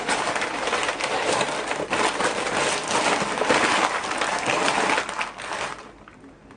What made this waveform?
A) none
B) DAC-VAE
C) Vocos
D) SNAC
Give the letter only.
A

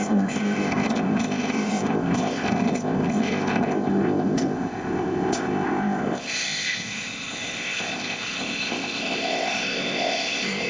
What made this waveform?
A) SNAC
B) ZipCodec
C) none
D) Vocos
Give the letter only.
B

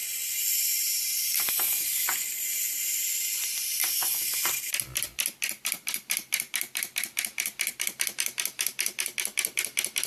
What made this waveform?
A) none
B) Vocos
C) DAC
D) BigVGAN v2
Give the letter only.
D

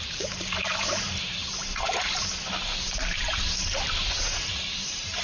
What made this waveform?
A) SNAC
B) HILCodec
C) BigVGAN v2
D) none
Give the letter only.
C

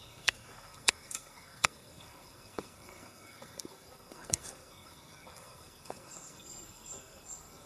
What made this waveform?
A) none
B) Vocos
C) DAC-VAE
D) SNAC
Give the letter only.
D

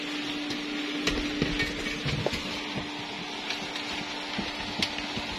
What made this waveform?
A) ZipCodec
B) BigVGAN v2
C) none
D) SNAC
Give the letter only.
C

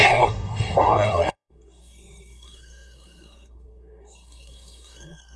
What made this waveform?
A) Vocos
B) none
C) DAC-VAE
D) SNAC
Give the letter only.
D